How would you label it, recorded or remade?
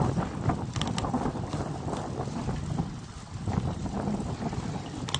recorded